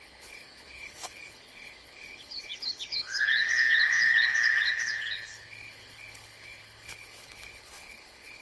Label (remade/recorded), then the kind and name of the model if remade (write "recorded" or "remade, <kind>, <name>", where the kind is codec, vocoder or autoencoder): remade, codec, HILCodec